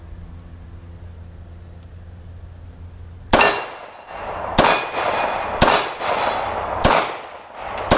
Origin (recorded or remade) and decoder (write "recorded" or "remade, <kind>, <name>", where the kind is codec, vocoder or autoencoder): recorded